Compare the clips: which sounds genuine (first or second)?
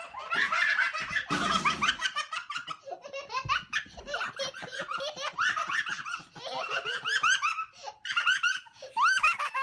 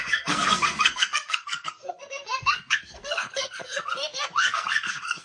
first